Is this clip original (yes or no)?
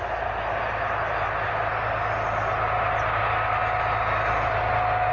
yes